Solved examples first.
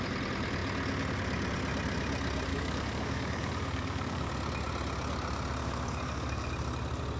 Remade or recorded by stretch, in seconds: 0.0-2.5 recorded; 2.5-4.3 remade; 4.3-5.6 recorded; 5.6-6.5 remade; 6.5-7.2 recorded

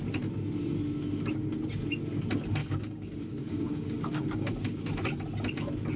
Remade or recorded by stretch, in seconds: 0.0-2.6 recorded; 2.6-4.9 remade; 4.9-6.0 recorded

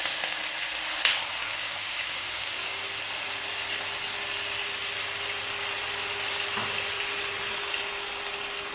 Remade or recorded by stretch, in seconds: 0.0-1.4 recorded; 1.4-2.8 remade; 2.8-8.7 recorded